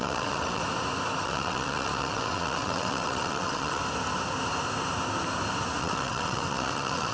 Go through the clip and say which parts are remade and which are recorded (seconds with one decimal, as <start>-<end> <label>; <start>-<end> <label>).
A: 0.0-0.6 remade; 0.6-1.2 recorded; 1.2-3.8 remade; 3.8-5.8 recorded; 5.8-7.1 remade